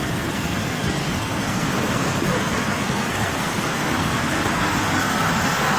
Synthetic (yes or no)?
yes